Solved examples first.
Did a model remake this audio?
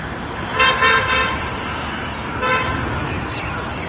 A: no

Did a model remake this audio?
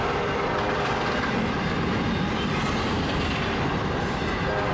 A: no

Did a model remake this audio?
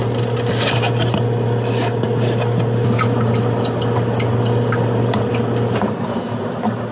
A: no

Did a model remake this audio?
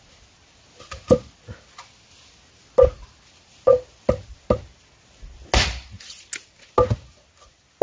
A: no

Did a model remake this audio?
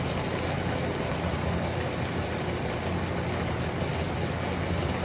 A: no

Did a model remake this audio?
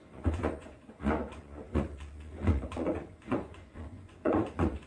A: yes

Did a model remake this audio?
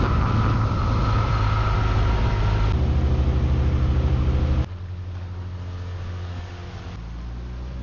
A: no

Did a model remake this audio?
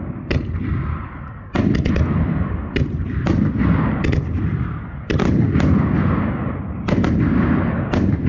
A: no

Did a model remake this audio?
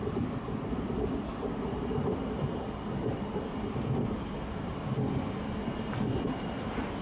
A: no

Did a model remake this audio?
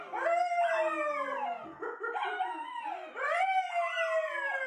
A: no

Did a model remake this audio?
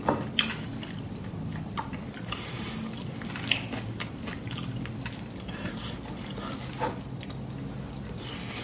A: no